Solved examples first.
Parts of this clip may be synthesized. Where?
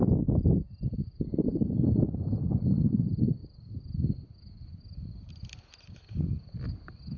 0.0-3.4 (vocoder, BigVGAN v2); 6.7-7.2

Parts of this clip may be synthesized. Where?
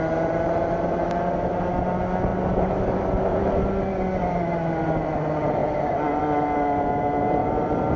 2.3-3.7 (vocoder, BigVGAN v2); 5.6-6.2; 7.4-8.0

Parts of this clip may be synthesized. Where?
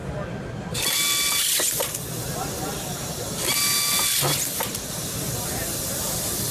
none